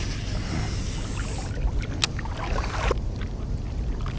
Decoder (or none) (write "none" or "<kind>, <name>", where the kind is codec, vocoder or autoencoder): none